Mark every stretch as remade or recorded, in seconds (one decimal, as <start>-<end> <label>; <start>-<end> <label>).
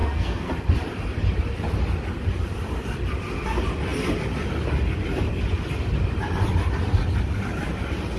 0.0-0.5 remade; 0.5-8.2 recorded